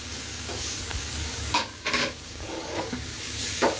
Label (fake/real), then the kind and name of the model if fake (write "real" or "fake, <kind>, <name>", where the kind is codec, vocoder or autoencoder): fake, codec, DAC